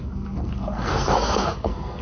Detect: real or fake fake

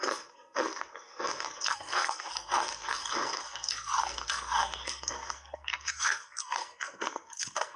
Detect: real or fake fake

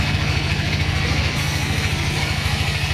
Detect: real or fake fake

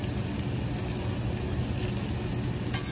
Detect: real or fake real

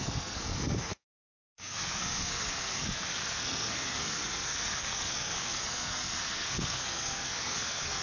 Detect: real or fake fake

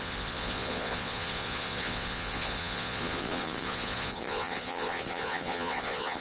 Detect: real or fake fake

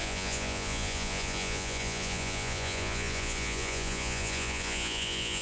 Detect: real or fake fake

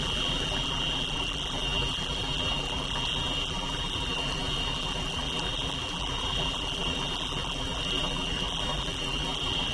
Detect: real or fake fake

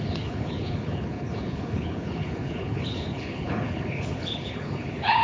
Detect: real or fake fake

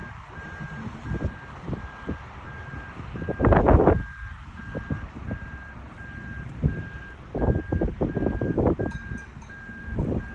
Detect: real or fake fake